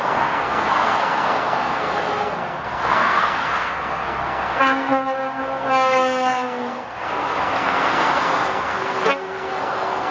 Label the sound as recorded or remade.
remade